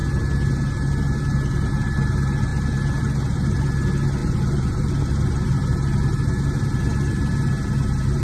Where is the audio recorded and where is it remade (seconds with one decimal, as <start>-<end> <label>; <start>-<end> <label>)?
0.0-4.2 recorded; 4.2-4.9 remade; 4.9-8.2 recorded